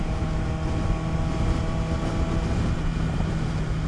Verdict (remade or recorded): recorded